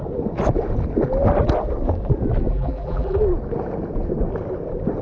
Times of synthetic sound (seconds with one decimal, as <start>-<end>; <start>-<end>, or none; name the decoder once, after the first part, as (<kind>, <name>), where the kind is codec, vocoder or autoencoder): 2.5-3.2 (vocoder, BigVGAN v2)